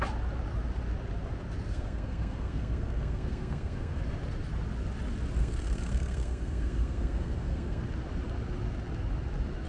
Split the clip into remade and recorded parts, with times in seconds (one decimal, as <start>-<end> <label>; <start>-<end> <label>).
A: 0.0-1.7 recorded; 1.7-4.0 remade; 4.0-5.4 recorded; 5.4-7.8 remade; 7.8-9.7 recorded